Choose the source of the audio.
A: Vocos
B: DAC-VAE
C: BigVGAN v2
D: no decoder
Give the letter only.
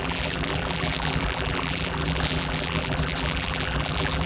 C